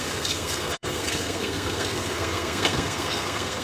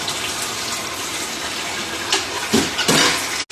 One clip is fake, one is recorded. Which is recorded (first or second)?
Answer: second